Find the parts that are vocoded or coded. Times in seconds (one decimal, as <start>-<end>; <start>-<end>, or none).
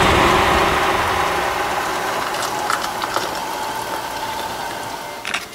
none